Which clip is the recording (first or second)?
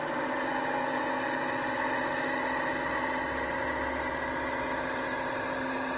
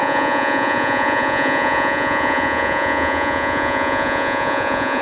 first